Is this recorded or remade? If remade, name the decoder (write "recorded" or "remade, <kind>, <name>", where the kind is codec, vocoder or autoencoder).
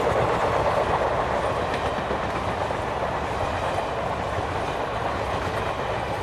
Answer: recorded